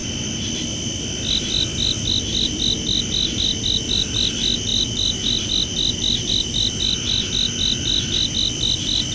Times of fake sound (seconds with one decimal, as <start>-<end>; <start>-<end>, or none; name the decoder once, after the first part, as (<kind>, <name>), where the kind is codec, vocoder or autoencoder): none